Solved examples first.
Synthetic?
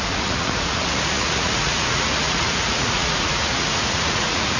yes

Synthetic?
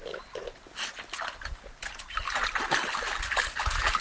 no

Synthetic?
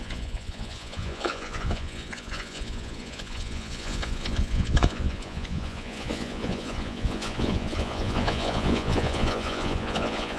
yes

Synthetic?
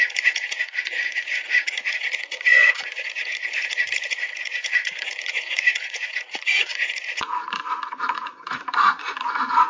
yes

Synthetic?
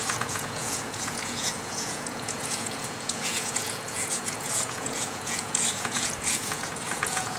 yes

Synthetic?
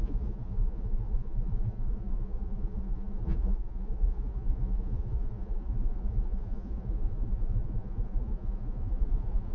yes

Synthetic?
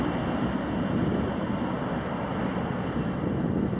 no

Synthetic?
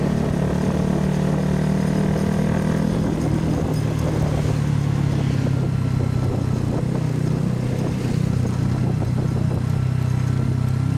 no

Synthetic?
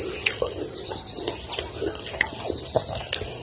no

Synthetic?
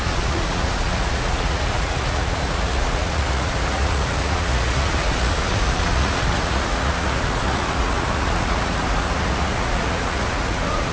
yes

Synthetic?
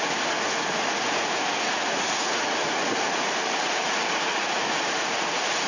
yes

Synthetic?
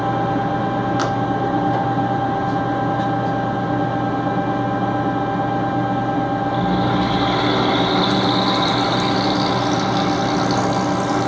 no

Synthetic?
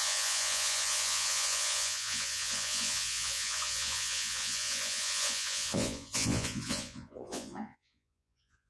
yes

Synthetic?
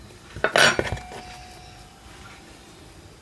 no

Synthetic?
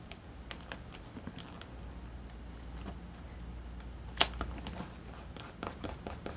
no